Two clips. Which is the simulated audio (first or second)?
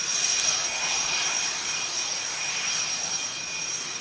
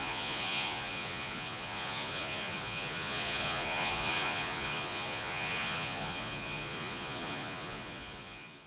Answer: second